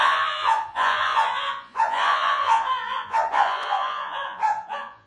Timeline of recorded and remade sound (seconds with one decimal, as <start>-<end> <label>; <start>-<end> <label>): 0.0-5.1 remade

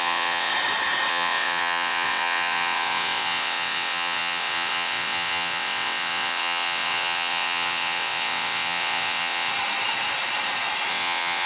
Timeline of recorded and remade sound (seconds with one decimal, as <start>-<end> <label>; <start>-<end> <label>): 0.0-0.5 remade; 0.5-1.1 recorded; 1.1-9.5 remade; 9.5-10.9 recorded; 10.9-11.5 remade

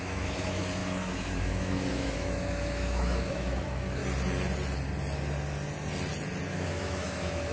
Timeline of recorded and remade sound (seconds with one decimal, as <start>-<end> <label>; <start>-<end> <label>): 0.0-4.0 remade; 4.0-6.5 recorded; 6.5-7.5 remade

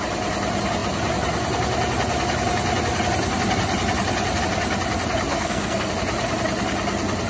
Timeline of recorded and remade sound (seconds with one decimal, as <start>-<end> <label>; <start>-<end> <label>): 0.0-5.3 recorded; 5.3-5.9 remade; 5.9-7.3 recorded

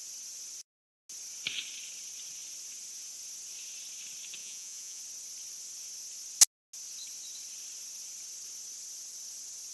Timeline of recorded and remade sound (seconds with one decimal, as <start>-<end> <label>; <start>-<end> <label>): 0.0-4.4 recorded; 4.4-5.0 remade; 5.0-9.7 recorded